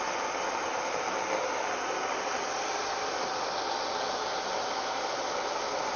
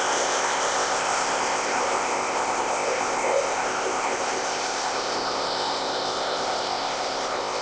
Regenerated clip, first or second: second